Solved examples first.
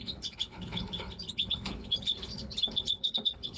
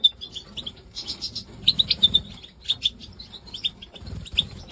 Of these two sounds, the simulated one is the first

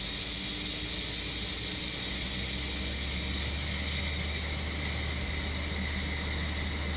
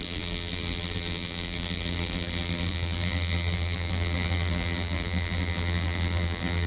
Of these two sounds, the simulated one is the second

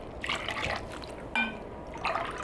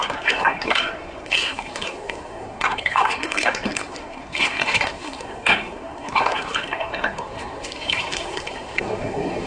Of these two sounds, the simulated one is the second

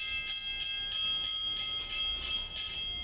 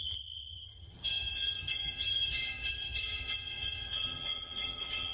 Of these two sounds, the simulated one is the second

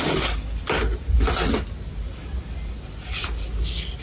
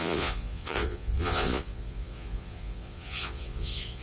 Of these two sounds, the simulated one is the second